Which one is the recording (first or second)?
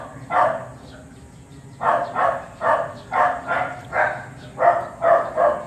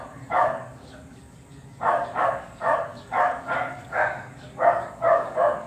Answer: first